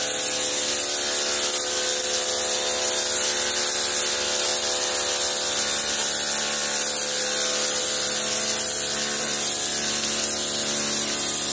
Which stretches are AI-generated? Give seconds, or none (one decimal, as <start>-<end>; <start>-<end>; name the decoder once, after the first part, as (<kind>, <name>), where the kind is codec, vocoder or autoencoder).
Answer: none